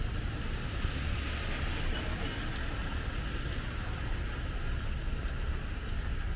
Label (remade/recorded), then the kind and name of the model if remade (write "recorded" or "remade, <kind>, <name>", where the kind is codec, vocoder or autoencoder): recorded